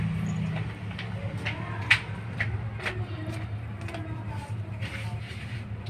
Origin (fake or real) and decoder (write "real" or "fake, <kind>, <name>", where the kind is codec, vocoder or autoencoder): real